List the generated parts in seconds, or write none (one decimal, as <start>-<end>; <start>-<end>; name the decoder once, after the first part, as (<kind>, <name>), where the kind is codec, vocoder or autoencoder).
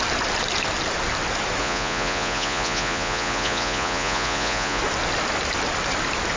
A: 1.6-4.8 (vocoder, Vocos)